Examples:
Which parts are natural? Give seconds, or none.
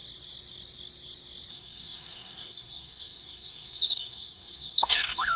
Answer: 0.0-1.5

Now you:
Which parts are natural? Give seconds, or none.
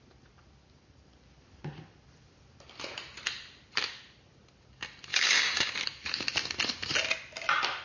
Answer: 0.0-5.1; 5.7-7.8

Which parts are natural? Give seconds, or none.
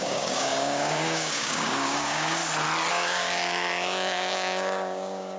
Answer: 2.4-2.9